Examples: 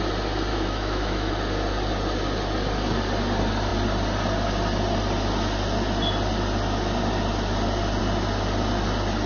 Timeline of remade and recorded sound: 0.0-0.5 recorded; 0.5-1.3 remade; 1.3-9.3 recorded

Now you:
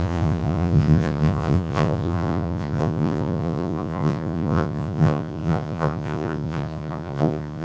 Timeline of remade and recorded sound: 0.0-7.6 remade